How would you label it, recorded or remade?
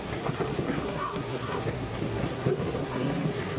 remade